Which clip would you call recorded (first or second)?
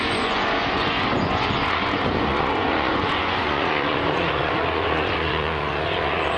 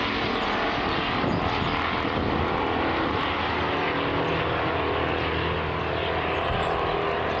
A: second